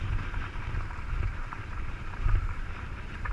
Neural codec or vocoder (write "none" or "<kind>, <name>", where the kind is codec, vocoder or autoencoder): vocoder, BigVGAN v2